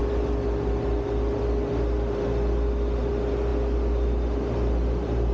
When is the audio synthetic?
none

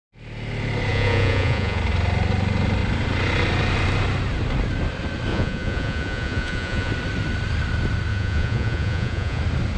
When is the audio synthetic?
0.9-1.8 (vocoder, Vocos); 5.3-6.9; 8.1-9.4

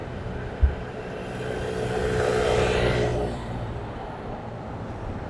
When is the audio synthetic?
3.1-5.3 (vocoder, BigVGAN v2)